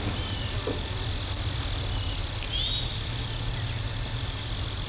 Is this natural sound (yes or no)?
yes